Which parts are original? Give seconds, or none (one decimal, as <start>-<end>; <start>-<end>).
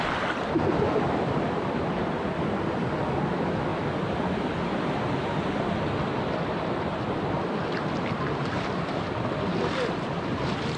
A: 0.0-10.8